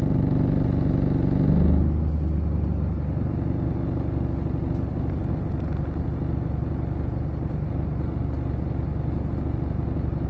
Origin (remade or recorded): recorded